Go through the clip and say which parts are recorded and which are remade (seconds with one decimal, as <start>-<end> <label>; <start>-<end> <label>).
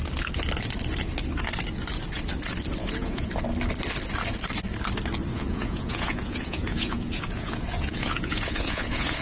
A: 0.0-2.8 recorded; 2.8-3.3 remade; 3.3-5.3 recorded; 5.3-9.2 remade